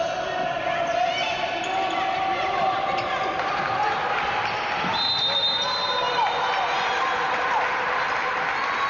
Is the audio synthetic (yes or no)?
no